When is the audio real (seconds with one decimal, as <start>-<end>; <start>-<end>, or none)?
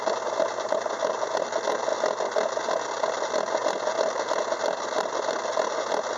0.0-6.2